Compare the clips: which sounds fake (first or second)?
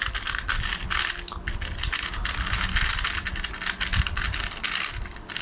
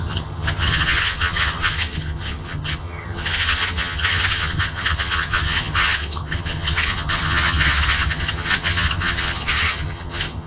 second